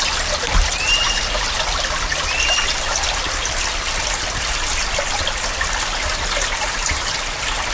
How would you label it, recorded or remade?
recorded